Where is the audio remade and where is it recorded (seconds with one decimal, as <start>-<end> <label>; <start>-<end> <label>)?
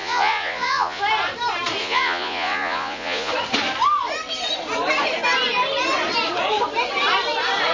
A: 0.0-1.0 remade; 1.0-1.8 recorded; 1.8-3.3 remade; 3.3-7.7 recorded